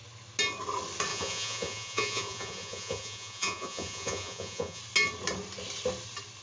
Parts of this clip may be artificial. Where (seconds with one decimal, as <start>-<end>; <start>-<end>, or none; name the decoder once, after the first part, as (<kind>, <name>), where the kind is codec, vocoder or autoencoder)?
1.1-4.8 (vocoder, Vocos)